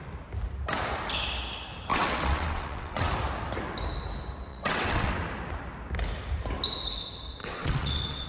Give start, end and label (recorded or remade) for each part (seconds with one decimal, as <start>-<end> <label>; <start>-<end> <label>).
0.0-1.9 recorded; 1.9-3.1 remade; 3.1-4.5 recorded; 4.5-5.1 remade; 5.1-7.4 recorded; 7.4-8.3 remade